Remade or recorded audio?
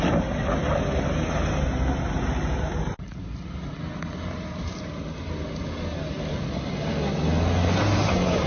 recorded